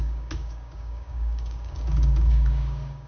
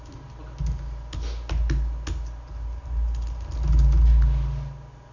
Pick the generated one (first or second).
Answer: first